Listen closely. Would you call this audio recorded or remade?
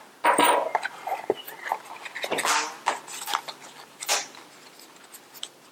recorded